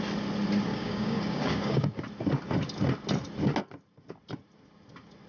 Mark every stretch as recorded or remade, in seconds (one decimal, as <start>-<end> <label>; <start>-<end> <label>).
0.0-0.7 recorded; 0.7-2.0 remade; 2.0-5.3 recorded